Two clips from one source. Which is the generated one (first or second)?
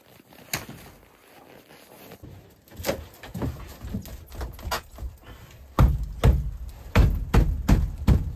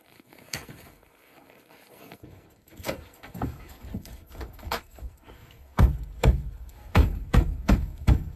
second